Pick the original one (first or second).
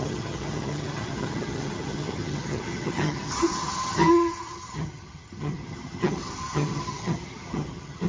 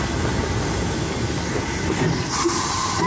second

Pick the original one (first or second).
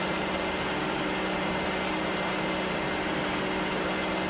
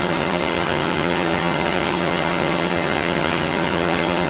first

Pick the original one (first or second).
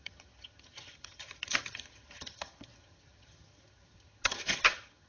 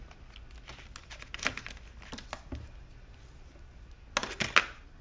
second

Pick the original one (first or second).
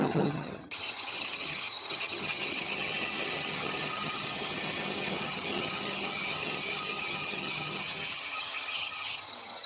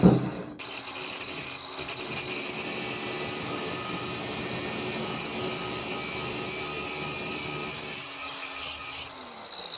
second